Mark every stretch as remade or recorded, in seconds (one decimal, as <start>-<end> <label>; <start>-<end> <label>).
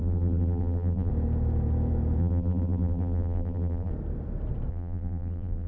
0.0-1.1 remade; 1.1-2.2 recorded; 2.2-3.9 remade; 3.9-4.7 recorded; 4.7-5.7 remade